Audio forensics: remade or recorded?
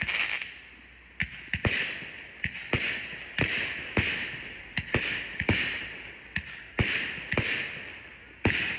recorded